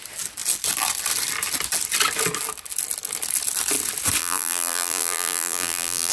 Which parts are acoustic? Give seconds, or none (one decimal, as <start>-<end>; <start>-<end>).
0.0-4.2